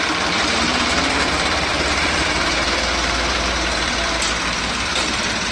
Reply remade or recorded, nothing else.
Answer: remade